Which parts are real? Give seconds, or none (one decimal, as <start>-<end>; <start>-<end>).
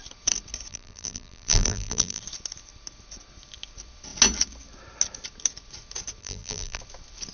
0.0-0.7; 2.2-6.2; 6.8-7.3